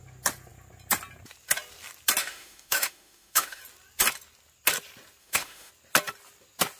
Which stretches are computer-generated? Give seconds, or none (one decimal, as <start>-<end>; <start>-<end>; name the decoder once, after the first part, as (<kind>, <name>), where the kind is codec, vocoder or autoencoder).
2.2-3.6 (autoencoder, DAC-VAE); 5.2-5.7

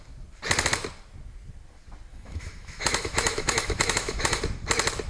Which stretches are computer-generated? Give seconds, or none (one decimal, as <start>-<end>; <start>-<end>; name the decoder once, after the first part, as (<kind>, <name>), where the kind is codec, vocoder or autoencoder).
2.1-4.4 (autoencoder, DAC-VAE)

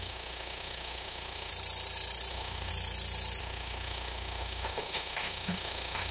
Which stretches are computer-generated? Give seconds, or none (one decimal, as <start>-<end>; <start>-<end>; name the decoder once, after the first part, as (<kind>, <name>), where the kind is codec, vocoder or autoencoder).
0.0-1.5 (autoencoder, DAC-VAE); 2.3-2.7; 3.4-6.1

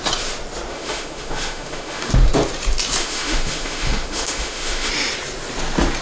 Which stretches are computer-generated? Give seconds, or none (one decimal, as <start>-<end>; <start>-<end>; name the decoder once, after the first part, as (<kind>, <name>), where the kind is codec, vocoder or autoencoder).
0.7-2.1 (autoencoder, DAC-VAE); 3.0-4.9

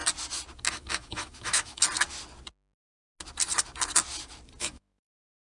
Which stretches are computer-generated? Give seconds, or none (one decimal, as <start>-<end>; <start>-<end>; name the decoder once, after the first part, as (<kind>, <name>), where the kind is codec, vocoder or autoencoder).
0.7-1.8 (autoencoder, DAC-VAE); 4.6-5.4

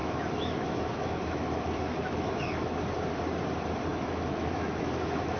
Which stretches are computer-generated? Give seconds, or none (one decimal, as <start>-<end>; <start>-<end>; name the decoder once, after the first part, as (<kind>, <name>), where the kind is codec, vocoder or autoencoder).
0.0-2.8 (autoencoder, DAC-VAE); 3.9-5.4

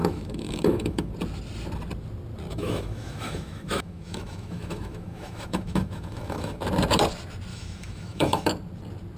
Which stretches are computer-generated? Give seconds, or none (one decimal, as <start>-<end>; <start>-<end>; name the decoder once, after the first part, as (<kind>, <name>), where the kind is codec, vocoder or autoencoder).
0.0-1.1 (autoencoder, DAC-VAE); 2.5-6.6; 7.5-8.5

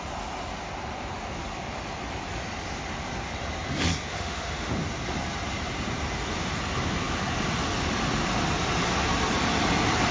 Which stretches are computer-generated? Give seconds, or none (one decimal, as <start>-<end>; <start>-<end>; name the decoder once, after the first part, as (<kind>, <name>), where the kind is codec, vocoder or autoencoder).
4.1-4.7 (autoencoder, DAC-VAE)